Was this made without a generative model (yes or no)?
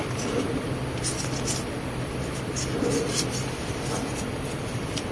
yes